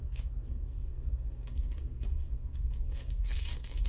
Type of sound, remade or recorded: remade